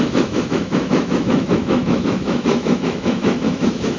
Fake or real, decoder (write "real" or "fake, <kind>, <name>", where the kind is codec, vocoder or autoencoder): fake, autoencoder, DAC-VAE